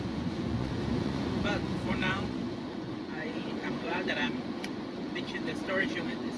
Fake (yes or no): yes